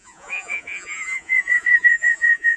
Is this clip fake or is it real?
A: fake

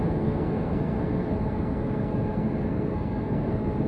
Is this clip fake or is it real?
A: fake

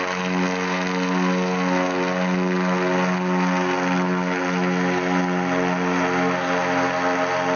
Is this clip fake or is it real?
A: real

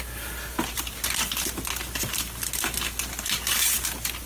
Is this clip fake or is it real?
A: real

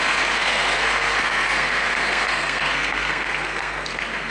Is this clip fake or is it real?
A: fake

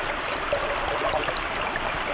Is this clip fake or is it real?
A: real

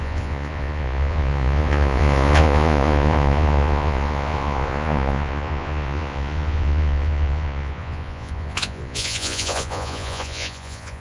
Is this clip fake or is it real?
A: fake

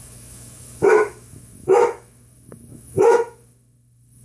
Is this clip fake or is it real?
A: fake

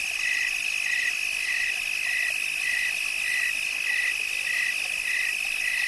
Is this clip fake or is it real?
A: real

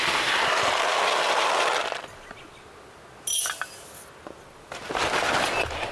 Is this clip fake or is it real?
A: real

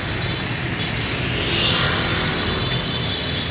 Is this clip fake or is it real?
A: real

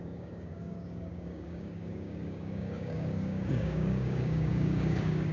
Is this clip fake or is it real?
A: fake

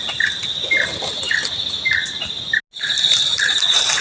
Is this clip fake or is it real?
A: real